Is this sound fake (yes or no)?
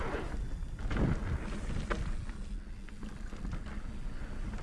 no